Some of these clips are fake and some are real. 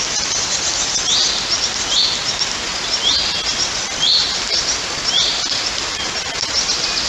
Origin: real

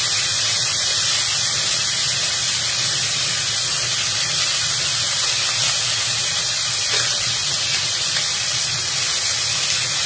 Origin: real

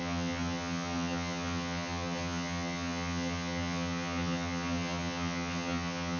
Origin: fake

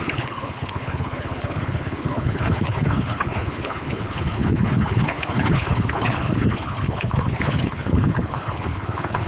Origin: fake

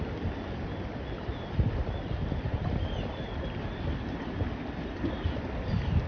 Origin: real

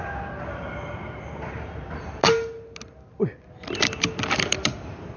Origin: real